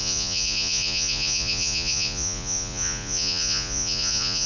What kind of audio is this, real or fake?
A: fake